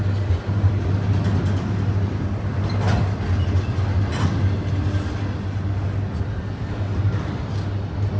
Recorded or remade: recorded